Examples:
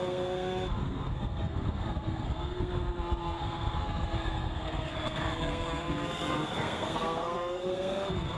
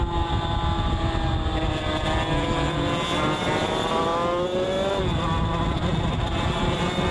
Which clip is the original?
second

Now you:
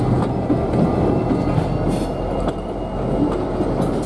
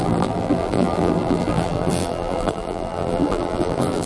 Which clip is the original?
first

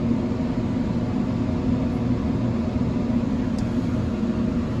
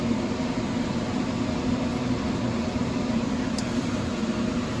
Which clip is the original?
first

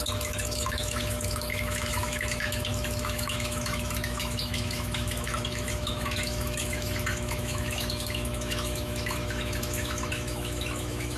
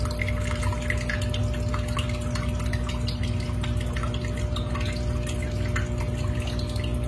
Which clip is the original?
second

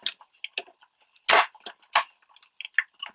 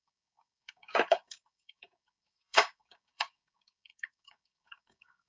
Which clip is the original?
first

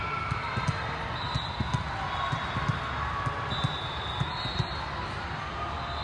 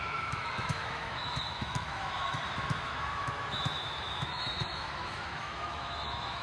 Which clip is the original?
first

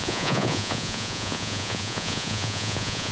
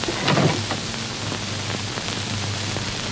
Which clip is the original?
second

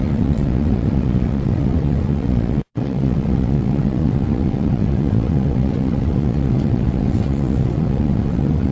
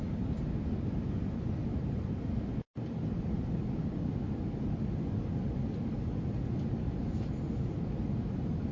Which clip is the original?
second